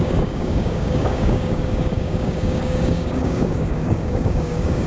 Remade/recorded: remade